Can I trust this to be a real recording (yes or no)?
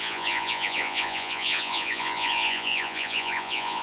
no